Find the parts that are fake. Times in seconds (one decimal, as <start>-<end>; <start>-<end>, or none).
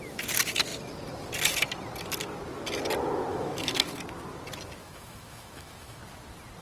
3.3-4.0; 4.8-6.0